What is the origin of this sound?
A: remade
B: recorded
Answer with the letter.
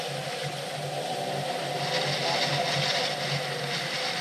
B